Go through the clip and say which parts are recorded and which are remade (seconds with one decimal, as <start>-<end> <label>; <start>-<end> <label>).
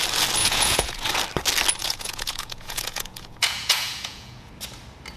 0.0-0.4 recorded; 0.4-1.1 remade; 1.1-1.8 recorded; 1.8-4.5 remade; 4.5-5.2 recorded